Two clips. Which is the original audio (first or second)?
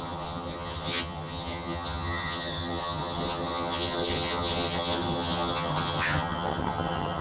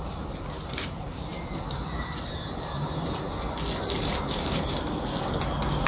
second